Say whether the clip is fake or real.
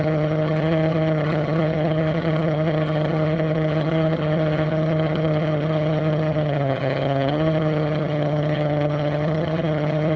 fake